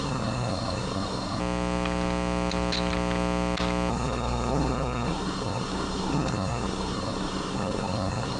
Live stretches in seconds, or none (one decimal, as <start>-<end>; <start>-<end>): 1.4-3.9